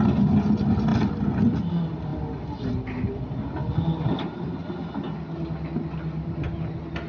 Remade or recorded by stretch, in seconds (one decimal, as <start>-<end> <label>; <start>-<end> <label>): 0.0-7.1 recorded